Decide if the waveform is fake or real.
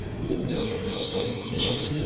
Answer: fake